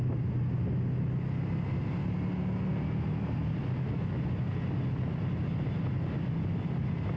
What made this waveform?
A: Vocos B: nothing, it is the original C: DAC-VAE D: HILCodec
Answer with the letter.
B